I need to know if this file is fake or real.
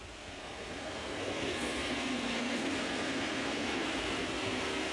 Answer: fake